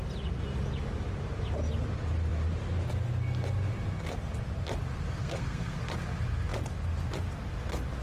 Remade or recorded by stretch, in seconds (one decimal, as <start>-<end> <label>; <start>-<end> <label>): 0.0-5.2 recorded; 5.2-5.8 remade; 5.8-8.0 recorded